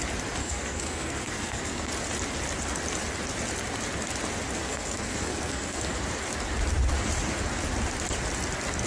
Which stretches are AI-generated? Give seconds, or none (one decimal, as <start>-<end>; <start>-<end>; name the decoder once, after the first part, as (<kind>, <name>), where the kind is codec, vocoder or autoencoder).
0.4-1.9 (codec, SNAC); 4.6-6.0